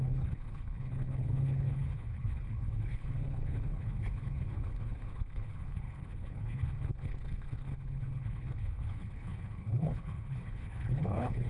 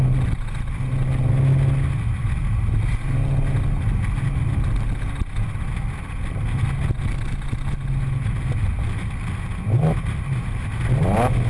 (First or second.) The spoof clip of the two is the first